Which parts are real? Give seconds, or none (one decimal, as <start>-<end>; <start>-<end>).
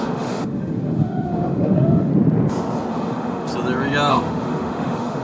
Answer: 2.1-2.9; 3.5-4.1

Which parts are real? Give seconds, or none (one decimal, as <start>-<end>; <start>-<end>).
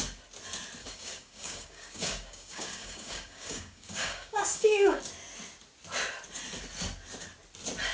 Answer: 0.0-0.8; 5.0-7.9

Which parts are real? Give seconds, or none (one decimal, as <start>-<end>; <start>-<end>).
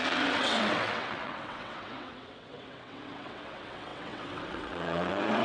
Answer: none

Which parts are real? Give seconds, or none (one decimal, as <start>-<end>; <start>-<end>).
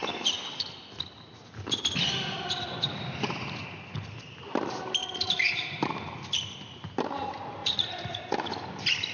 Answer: 0.0-7.6; 8.2-9.1